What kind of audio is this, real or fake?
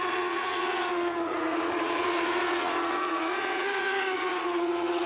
fake